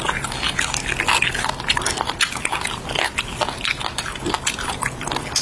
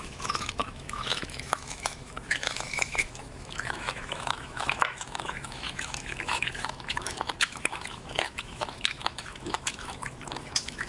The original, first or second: first